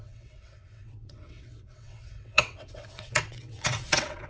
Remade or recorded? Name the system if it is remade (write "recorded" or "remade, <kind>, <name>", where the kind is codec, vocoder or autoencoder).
remade, vocoder, WaveNeXt